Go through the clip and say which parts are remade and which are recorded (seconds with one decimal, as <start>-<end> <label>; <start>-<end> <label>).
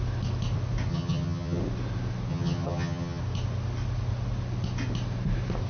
0.0-0.9 recorded; 0.9-1.6 remade; 1.6-2.3 recorded; 2.3-3.2 remade; 3.2-5.7 recorded